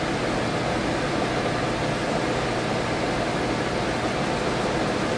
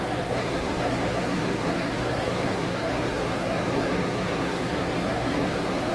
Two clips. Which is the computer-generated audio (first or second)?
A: second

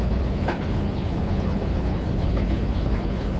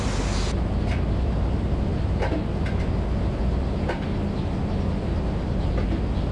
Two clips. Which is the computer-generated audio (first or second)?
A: first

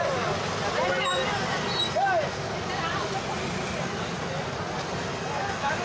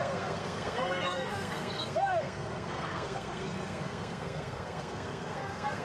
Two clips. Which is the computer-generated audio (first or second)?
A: second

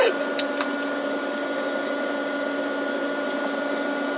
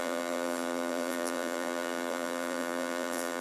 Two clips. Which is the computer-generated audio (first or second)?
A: second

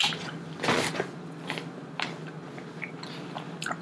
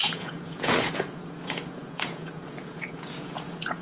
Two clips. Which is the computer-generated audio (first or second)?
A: second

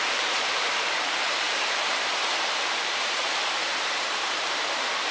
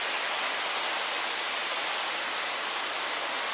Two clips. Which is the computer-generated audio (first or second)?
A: first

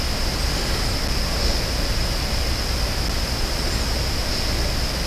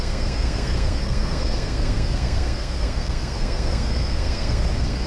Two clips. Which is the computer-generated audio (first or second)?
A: second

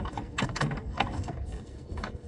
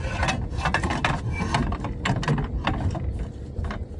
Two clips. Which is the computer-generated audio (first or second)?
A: first